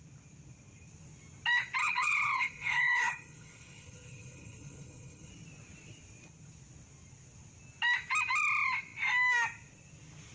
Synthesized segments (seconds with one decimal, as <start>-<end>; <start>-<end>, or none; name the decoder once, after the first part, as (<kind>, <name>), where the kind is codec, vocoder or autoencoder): 1.8-5.3 (codec, HILCodec)